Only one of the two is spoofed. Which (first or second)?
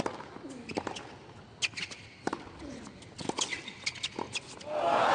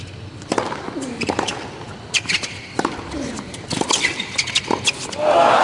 second